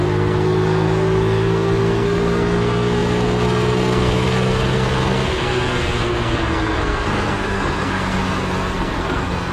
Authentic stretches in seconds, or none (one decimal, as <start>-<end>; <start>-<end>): none